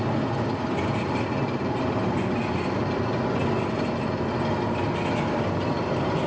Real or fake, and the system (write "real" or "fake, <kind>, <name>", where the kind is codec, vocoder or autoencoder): real